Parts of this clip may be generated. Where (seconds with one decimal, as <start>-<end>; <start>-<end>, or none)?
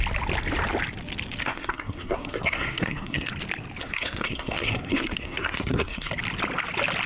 1.4-3.3; 3.8-6.1